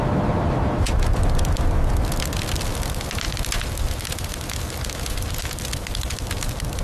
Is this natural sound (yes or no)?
yes